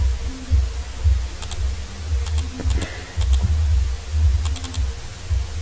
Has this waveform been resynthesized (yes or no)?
no